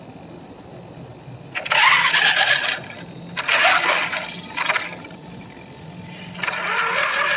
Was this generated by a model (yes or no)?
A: no